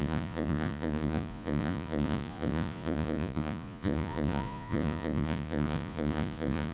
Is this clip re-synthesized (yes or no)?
yes